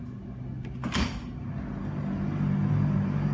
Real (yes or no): yes